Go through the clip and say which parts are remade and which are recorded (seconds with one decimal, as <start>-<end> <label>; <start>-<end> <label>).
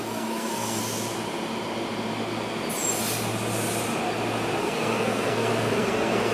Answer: 0.0-0.8 remade; 0.8-4.6 recorded; 4.6-6.3 remade